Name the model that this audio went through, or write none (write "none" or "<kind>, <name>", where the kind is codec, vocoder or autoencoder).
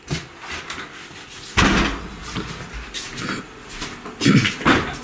none